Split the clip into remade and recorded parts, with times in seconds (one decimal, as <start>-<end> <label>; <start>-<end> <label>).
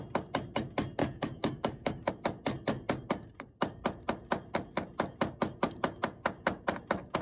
0.0-1.0 recorded; 1.0-2.1 remade; 2.1-7.2 recorded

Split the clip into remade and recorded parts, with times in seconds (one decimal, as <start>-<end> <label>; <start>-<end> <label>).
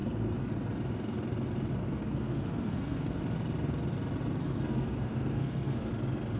0.0-0.5 remade; 0.5-1.8 recorded; 1.8-3.2 remade; 3.2-4.4 recorded; 4.4-5.9 remade; 5.9-6.4 recorded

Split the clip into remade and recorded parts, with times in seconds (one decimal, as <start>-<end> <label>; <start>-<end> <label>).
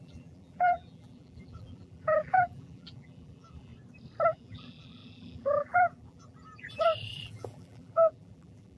0.0-3.7 remade; 3.7-4.3 recorded; 4.3-8.8 remade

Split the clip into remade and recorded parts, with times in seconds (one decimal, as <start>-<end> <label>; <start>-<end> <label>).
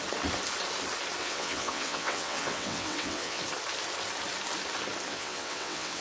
0.0-1.2 recorded; 1.2-3.4 remade; 3.4-5.1 recorded; 5.1-6.0 remade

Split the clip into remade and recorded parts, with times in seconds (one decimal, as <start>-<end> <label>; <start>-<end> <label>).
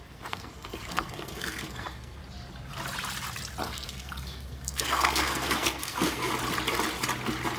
0.0-2.2 remade; 2.2-3.6 recorded; 3.6-6.3 remade; 6.3-7.6 recorded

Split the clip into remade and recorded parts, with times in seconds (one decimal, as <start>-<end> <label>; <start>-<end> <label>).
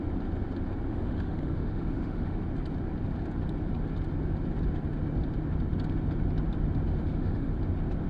0.0-0.9 recorded; 0.9-2.4 remade; 2.4-6.9 recorded; 6.9-7.5 remade; 7.5-8.1 recorded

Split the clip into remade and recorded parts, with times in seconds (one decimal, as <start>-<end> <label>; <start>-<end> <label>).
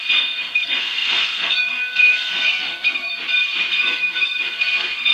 0.0-3.1 remade; 3.1-3.7 recorded; 3.7-5.1 remade